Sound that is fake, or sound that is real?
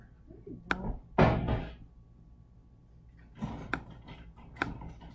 real